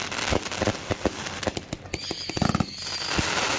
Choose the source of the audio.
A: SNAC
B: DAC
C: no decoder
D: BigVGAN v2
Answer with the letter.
C